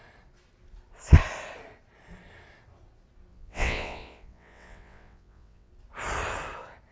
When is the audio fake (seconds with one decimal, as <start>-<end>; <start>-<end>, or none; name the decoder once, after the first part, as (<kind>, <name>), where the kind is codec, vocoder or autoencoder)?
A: 3.3-5.7 (vocoder, WaveNeXt)